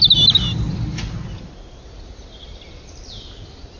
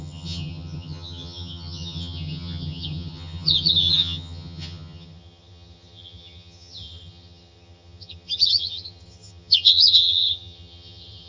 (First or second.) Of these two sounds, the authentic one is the first